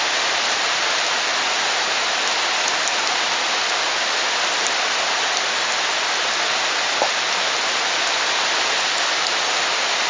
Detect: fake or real real